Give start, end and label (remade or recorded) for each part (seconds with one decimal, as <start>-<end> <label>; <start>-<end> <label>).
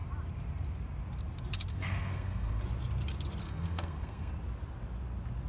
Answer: 0.0-1.7 recorded; 1.7-2.6 remade; 2.6-3.4 recorded; 3.4-4.3 remade; 4.3-5.5 recorded